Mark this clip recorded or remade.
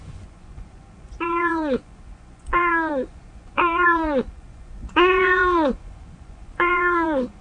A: remade